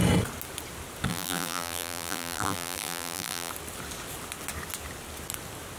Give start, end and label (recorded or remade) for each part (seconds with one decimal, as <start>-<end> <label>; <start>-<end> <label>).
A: 0.0-1.1 recorded; 1.1-3.5 remade; 3.5-5.8 recorded